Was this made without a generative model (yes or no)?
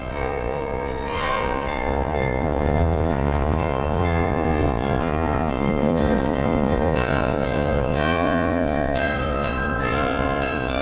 no